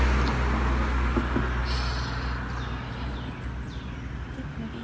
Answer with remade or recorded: recorded